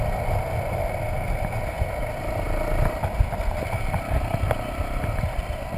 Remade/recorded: recorded